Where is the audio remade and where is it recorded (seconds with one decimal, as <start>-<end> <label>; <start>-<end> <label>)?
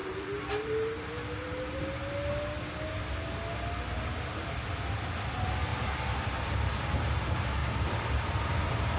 0.0-1.8 remade; 1.8-7.6 recorded; 7.6-9.0 remade